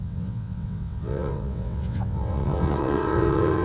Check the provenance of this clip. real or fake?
fake